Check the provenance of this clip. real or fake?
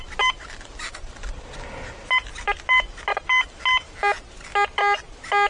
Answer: real